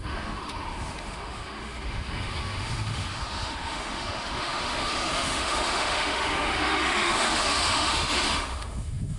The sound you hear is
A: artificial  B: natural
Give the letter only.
A